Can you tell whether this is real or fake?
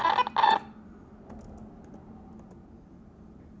real